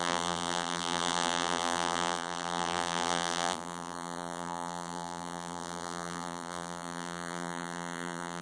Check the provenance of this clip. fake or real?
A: fake